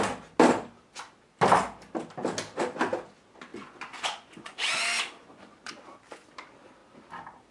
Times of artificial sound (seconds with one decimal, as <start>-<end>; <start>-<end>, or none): 3.5-4.8; 5.2-5.7